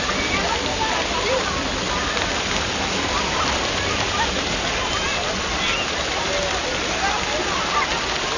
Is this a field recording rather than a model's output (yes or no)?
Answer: yes